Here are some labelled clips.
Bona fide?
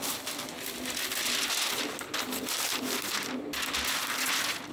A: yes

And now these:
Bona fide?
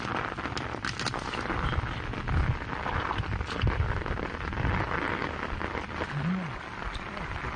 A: yes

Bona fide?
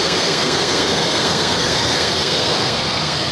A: no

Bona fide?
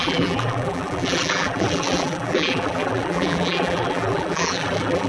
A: no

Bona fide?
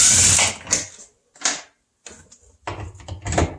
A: yes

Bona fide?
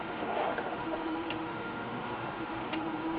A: no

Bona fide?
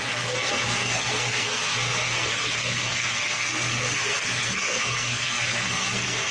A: no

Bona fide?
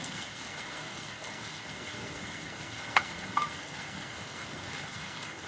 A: no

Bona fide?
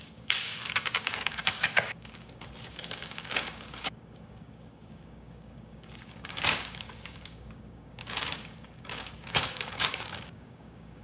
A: no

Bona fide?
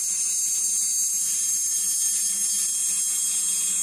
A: yes